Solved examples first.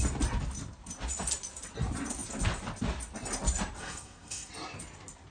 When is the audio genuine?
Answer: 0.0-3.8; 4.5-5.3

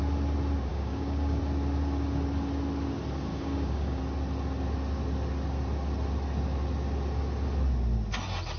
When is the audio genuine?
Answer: 0.0-0.7; 1.4-3.3; 4.0-8.6

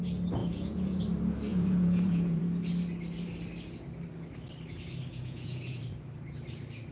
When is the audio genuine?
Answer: 0.0-0.4; 1.0-1.5; 2.4-5.1; 5.8-6.9

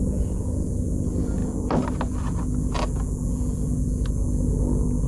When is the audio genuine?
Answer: 0.0-5.1

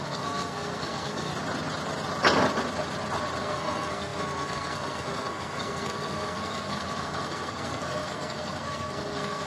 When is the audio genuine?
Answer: 1.3-3.4

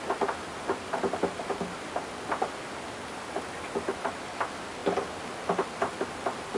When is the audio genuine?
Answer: 0.0-6.6

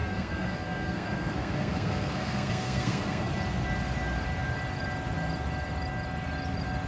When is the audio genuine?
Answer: 3.3-6.9